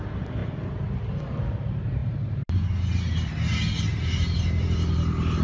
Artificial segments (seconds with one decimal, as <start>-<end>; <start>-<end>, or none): none